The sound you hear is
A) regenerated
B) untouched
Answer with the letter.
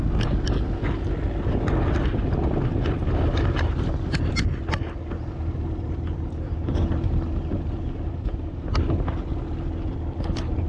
B